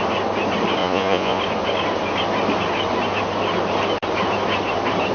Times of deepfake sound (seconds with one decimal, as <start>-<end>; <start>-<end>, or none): 0.8-1.4